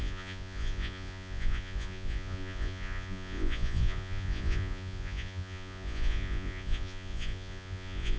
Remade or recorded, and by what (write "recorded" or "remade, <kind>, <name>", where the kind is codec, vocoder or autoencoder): remade, vocoder, Vocos